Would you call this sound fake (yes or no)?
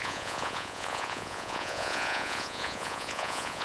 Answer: yes